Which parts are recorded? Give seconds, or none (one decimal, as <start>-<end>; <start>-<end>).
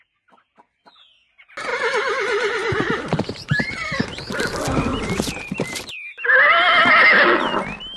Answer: 0.0-1.7; 4.4-4.9; 5.8-8.0